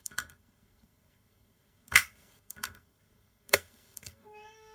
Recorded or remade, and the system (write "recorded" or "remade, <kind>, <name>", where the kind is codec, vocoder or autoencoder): remade, codec, SNAC